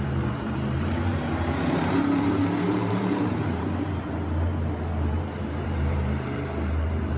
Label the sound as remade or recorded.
remade